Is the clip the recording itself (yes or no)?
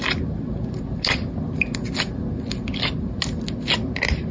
yes